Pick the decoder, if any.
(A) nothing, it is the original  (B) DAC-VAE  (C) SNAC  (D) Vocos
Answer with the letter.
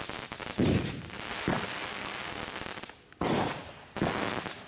A